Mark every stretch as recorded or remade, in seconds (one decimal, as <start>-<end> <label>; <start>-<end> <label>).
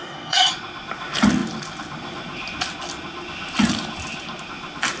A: 0.0-0.5 remade; 0.5-5.0 recorded